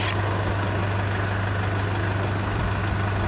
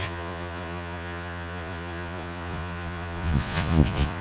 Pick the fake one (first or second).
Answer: second